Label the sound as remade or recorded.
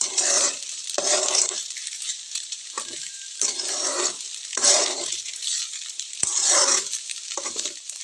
remade